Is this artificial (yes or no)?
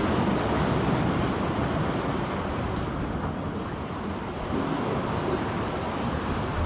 no